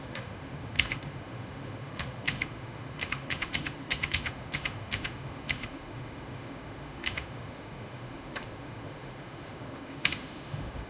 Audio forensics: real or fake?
fake